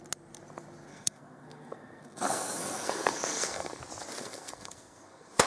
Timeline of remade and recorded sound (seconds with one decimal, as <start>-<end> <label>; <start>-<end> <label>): 0.0-0.9 recorded; 0.9-3.8 remade; 3.8-4.2 recorded; 4.2-5.5 remade